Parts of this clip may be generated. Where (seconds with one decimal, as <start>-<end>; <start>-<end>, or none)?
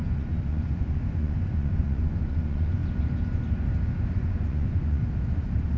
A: 0.0-2.8; 4.1-5.0